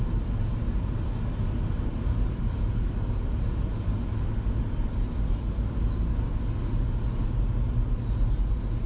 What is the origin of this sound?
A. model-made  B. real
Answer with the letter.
B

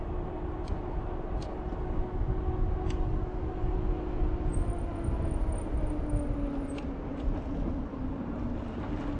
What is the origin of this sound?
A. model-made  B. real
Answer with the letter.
B